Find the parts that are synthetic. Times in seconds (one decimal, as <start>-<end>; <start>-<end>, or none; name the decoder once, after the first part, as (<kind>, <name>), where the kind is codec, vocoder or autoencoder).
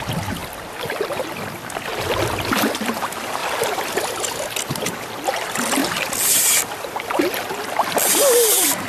3.4-4.0 (vocoder, BigVGAN v2)